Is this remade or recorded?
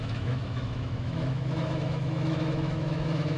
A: remade